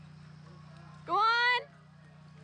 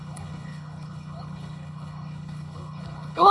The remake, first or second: second